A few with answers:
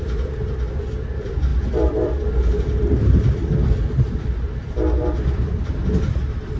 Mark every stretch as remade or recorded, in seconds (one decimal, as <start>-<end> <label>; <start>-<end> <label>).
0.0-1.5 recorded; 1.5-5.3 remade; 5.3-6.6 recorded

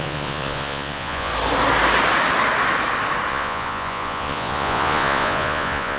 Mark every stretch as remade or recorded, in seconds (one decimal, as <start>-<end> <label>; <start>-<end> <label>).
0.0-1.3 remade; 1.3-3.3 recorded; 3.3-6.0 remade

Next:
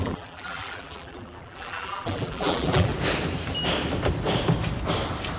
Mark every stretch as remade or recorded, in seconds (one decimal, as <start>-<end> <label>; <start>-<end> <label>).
0.0-2.9 remade; 2.9-5.4 recorded

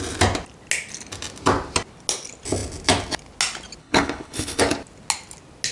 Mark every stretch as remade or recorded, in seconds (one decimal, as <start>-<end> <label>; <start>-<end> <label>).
0.0-3.8 recorded; 3.8-4.6 remade; 4.6-5.7 recorded